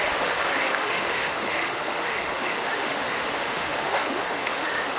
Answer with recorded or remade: remade